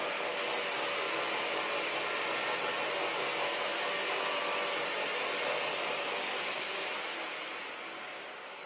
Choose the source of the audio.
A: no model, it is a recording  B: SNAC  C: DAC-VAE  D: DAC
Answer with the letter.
A